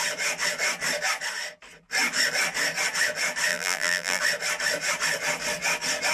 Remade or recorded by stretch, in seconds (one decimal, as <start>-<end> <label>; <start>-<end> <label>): 0.0-3.5 recorded; 3.5-4.2 remade; 4.2-6.1 recorded